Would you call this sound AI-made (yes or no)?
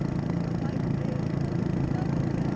no